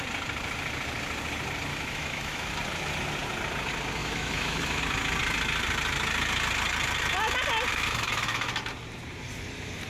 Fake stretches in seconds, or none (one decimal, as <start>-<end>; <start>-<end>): 1.7-2.5; 4.0-4.8; 7.7-8.5